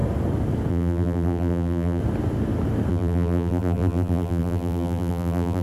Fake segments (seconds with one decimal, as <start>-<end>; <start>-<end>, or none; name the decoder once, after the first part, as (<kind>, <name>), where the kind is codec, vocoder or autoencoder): 0.7-2.0 (vocoder, BigVGAN v2); 2.9-5.6